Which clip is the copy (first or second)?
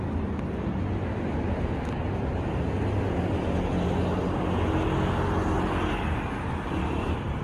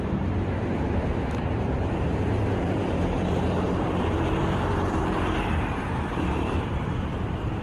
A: second